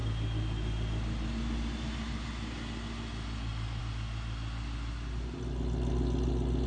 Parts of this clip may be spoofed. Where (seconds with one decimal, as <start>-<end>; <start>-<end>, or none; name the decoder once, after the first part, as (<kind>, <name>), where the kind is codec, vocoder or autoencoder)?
none